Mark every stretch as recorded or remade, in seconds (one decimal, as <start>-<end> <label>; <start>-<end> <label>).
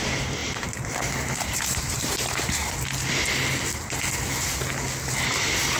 0.0-2.6 remade; 2.6-5.8 recorded